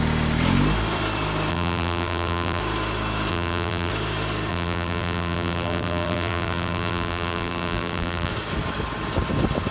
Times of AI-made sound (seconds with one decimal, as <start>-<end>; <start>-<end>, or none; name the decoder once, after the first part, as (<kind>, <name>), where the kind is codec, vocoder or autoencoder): 1.5-2.6 (vocoder, BigVGAN v2); 3.3-3.9; 4.5-8.3